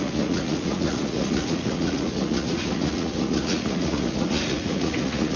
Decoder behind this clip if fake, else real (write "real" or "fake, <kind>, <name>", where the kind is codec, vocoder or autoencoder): fake, vocoder, Vocos